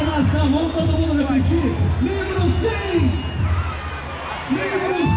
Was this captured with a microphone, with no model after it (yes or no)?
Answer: yes